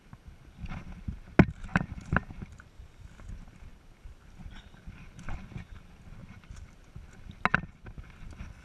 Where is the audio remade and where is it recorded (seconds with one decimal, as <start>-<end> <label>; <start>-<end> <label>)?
0.0-1.7 recorded; 1.7-2.8 remade; 2.8-6.2 recorded; 6.2-6.8 remade; 6.8-8.6 recorded

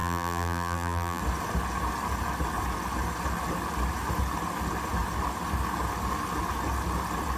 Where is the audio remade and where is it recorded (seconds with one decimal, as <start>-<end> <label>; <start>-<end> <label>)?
0.0-1.2 remade; 1.2-7.4 recorded

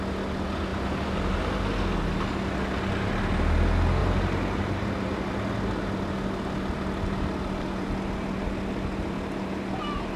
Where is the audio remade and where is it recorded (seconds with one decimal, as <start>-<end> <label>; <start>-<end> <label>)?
0.0-0.7 recorded; 0.7-1.4 remade; 1.4-4.0 recorded; 4.0-5.3 remade; 5.3-10.2 recorded

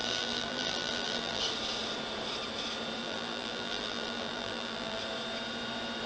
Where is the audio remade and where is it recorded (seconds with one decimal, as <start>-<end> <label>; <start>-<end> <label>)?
0.0-1.4 remade; 1.4-3.0 recorded; 3.0-5.0 remade; 5.0-6.1 recorded

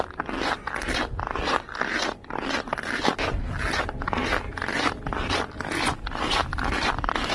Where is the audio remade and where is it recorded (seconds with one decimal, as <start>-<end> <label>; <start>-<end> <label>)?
0.0-7.3 recorded